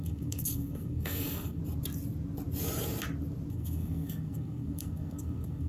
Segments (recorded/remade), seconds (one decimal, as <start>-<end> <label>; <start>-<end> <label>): 0.0-1.6 remade; 1.6-3.5 recorded; 3.5-5.7 remade